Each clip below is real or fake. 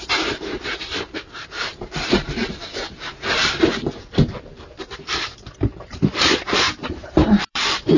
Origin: fake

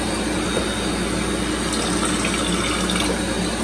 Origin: real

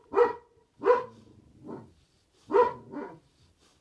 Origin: real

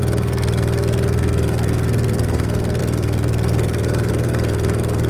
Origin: fake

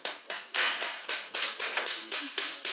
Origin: fake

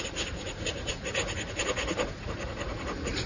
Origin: fake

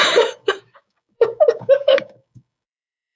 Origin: fake